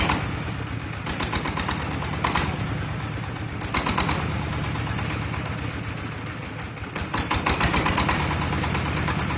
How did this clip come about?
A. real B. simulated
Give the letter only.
A